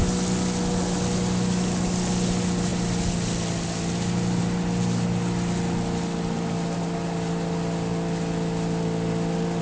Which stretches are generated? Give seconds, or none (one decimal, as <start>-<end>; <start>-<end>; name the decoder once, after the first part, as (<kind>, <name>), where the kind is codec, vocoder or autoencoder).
none